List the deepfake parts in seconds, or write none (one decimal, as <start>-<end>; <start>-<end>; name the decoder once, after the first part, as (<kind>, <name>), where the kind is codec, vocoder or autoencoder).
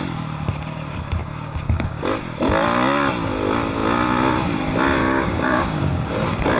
1.2-2.0 (codec, DAC); 5.0-6.1